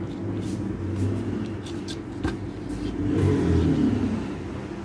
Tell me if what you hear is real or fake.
real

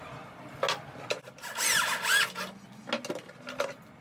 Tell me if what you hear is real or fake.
real